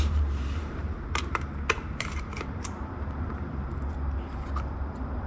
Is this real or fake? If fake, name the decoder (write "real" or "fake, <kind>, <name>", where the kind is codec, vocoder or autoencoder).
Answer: fake, vocoder, BigVGAN v2